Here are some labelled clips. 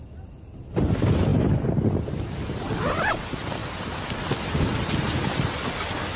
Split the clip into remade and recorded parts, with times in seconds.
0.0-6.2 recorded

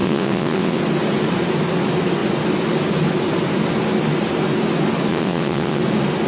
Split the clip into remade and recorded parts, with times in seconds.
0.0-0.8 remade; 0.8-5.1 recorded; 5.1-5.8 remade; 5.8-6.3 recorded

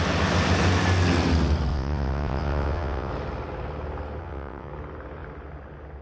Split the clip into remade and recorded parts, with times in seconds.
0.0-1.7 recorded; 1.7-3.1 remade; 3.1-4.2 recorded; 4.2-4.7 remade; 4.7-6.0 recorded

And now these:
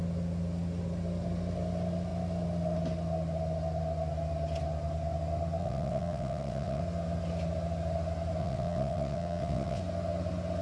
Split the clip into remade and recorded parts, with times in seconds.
0.0-5.6 recorded; 5.6-6.8 remade; 6.8-8.4 recorded; 8.4-9.8 remade; 9.8-10.6 recorded

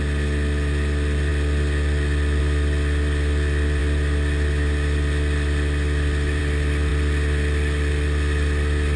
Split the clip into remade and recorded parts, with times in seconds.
0.0-9.0 recorded

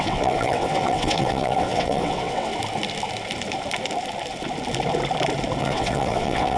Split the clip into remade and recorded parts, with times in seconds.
0.0-2.5 remade; 2.5-5.6 recorded; 5.6-6.6 remade

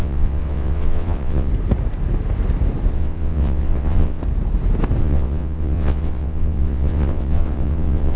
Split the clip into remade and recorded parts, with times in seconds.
0.0-1.5 remade; 1.5-2.9 recorded; 2.9-4.2 remade; 4.2-5.0 recorded; 5.0-8.2 remade